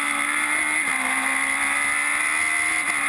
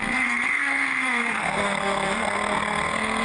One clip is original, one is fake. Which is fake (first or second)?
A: second